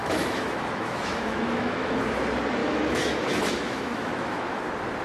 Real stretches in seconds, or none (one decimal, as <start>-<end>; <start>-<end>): 2.0-2.6; 4.6-5.0